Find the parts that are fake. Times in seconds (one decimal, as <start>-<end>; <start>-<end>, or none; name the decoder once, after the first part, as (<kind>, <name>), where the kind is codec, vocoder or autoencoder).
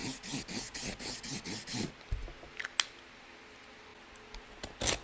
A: none